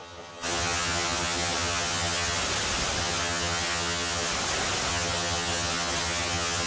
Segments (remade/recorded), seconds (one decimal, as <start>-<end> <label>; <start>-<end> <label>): 0.0-2.4 remade; 2.4-3.0 recorded; 3.0-4.3 remade; 4.3-4.9 recorded; 4.9-6.7 remade